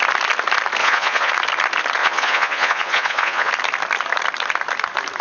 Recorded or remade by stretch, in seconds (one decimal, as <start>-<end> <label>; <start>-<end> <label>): 0.0-0.8 recorded; 0.8-1.3 remade; 1.3-2.0 recorded; 2.0-3.5 remade; 3.5-5.2 recorded